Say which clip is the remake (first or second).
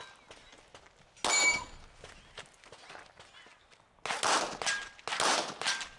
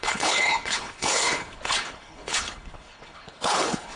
second